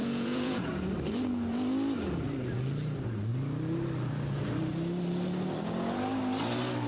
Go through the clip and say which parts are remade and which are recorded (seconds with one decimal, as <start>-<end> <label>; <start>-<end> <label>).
0.0-0.7 remade; 0.7-6.9 recorded